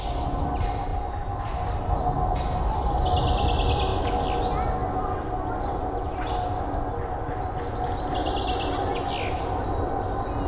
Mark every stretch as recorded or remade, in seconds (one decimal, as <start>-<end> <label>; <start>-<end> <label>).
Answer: 0.0-0.9 recorded; 0.9-1.4 remade; 1.4-10.5 recorded